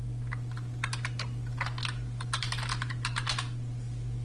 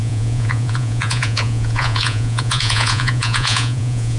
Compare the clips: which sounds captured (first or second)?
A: first